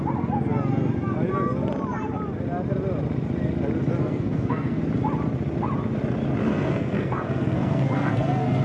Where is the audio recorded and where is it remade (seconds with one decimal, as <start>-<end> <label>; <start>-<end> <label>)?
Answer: 0.0-4.0 recorded; 4.0-4.8 remade; 4.8-6.5 recorded; 6.5-8.6 remade